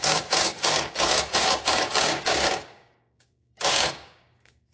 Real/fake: fake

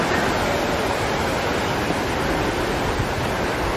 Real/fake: real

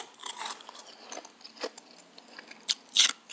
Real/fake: real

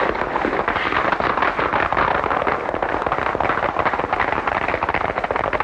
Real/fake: real